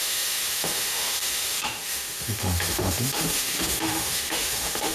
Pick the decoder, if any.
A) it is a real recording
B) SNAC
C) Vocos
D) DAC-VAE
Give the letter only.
D